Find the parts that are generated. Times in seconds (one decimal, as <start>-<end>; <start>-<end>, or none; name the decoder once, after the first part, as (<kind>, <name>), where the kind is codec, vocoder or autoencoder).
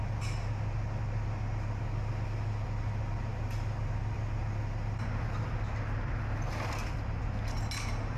none